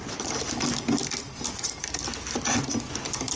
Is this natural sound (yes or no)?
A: no